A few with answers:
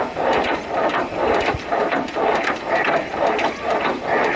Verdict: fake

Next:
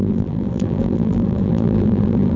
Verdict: fake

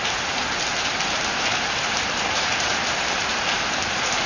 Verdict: fake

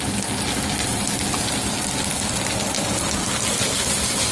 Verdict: real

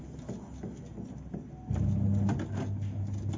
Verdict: real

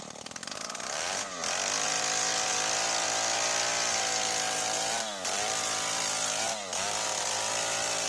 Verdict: fake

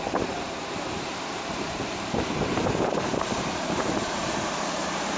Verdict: fake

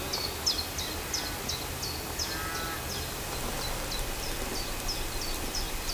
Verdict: real